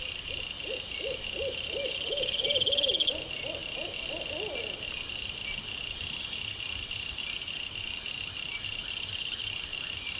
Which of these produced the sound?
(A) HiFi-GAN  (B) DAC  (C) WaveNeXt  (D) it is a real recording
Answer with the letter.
D